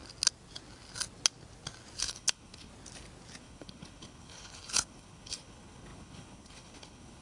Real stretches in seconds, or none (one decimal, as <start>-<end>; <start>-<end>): 0.0-2.0; 2.7-3.4